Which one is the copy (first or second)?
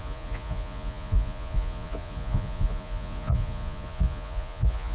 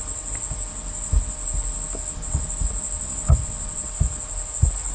first